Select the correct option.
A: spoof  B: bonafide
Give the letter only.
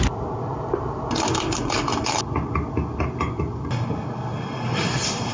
B